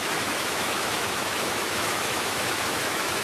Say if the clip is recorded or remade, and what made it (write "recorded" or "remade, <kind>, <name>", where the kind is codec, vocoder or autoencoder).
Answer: remade, autoencoder, DAC-VAE